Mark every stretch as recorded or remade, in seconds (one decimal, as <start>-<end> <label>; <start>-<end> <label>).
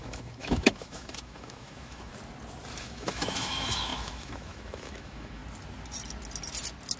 0.0-2.1 remade; 2.1-2.8 recorded; 2.8-5.4 remade; 5.4-7.0 recorded